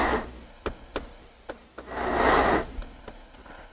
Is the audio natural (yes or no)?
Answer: yes